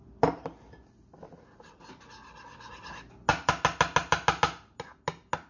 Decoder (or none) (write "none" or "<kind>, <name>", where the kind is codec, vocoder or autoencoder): none